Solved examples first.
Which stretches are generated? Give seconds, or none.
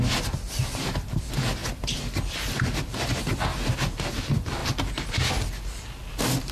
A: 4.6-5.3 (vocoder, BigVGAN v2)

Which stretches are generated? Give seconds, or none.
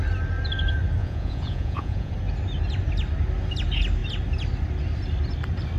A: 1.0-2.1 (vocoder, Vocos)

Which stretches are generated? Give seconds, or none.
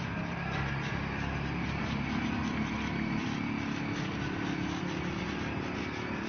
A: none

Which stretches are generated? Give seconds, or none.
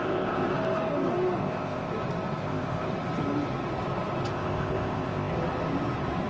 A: 0.0-0.5 (codec, ZipCodec); 1.4-1.9; 2.4-2.9; 4.3-5.3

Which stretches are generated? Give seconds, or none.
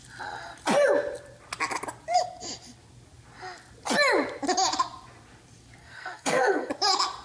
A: 5.8-6.7 (codec, SNAC)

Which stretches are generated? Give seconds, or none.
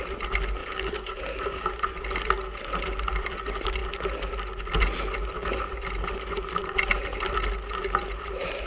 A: 0.6-1.7 (codec, DAC)